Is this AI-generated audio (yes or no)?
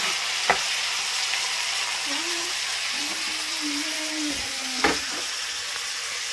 yes